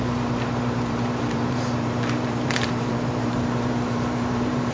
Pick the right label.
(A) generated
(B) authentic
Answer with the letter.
A